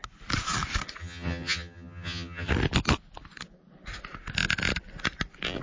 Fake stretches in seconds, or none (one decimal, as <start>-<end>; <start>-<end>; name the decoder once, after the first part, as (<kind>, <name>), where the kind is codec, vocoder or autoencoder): 1.0-2.5 (vocoder, HiFi-GAN)